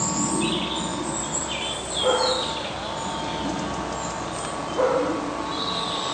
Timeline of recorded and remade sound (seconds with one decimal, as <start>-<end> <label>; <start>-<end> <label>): 0.0-6.1 recorded